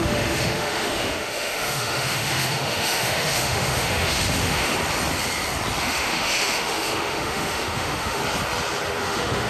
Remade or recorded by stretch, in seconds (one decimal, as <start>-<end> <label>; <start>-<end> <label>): 0.0-4.7 remade; 4.7-5.8 recorded; 5.8-8.2 remade; 8.2-9.0 recorded; 9.0-9.5 remade